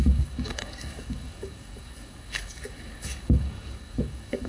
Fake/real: fake